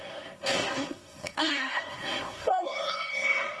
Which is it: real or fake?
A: fake